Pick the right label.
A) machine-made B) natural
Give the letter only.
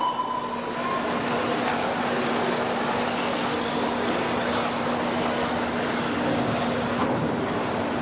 B